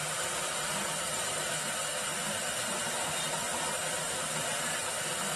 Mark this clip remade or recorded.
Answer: recorded